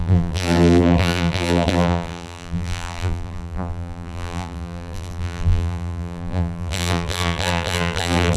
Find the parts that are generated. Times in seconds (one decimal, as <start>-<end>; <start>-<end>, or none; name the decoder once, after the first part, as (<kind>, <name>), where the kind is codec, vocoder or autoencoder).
0.0-8.4 (vocoder, BigVGAN v2)